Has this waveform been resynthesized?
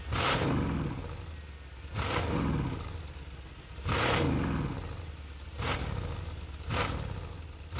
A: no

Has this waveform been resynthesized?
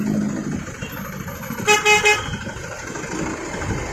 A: no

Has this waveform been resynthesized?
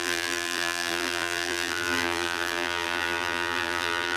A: yes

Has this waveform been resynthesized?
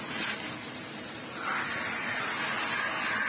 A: no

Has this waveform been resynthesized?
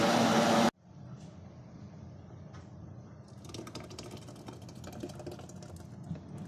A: no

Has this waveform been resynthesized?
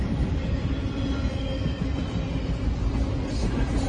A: no